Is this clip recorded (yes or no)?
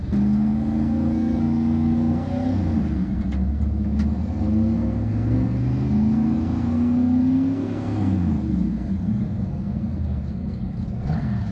no